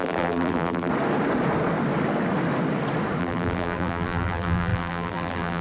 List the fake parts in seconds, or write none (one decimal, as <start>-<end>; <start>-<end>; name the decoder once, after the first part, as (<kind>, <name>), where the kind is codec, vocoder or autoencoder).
0.0-0.9 (vocoder, BigVGAN v2); 3.2-5.6